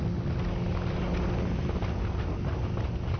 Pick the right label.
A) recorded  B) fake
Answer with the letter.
A